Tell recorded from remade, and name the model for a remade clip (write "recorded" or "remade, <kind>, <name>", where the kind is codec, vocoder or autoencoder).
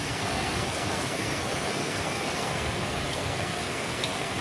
remade, codec, SNAC